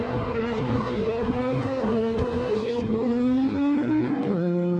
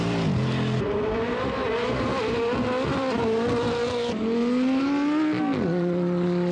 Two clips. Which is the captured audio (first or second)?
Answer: second